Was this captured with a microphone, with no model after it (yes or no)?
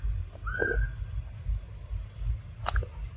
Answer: yes